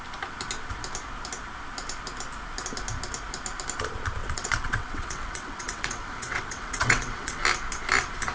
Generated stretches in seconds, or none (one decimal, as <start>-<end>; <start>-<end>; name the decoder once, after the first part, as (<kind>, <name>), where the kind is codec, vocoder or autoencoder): 4.2-7.4 (vocoder, WaveNeXt)